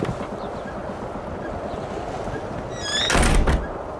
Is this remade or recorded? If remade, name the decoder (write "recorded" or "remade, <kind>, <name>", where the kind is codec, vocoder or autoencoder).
recorded